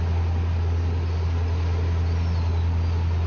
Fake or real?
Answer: real